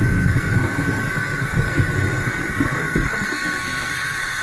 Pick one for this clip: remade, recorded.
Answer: remade